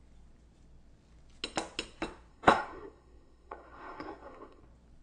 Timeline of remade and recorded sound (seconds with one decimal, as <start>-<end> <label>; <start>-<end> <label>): 0.0-2.3 recorded; 2.3-4.6 remade; 4.6-5.0 recorded

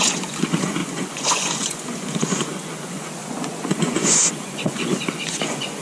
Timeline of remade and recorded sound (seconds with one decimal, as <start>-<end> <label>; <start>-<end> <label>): 0.0-5.8 remade

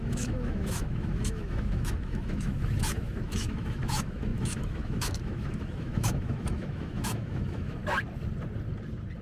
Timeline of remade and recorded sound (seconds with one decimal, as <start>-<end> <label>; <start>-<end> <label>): 0.0-7.8 remade; 7.8-9.2 recorded

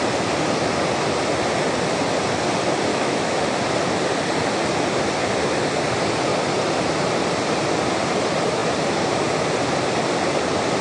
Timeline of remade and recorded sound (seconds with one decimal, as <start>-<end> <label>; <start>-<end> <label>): 0.0-2.9 recorded; 2.9-3.4 remade; 3.4-10.8 recorded

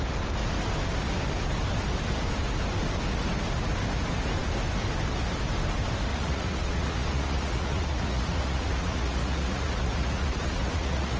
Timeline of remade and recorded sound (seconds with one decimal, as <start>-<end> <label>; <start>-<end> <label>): 0.0-6.1 recorded; 6.1-11.2 remade

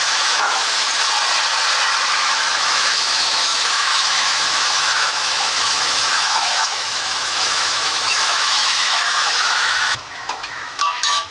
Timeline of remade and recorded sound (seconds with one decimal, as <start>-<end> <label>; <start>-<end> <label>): 0.0-0.9 remade; 0.9-2.1 recorded; 2.1-11.3 remade

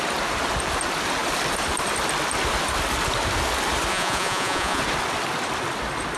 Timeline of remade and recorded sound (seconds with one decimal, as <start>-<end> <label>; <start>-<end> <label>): 0.0-3.9 recorded; 3.9-4.8 remade; 4.8-6.2 recorded

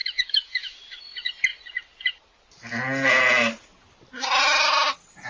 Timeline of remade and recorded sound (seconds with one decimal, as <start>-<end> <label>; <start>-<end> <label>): 0.0-1.0 remade; 1.0-5.3 recorded